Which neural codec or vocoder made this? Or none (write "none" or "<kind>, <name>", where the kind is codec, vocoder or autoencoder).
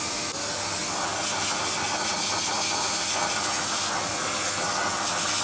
none